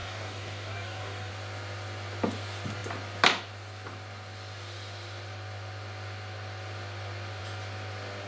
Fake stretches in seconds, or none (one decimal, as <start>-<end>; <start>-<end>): 0.0-1.3

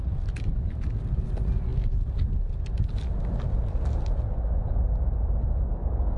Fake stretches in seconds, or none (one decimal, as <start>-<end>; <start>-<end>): none

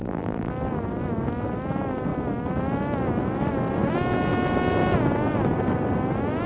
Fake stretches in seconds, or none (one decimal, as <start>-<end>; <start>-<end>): 0.0-0.5